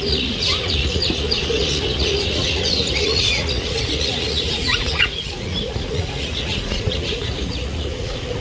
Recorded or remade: remade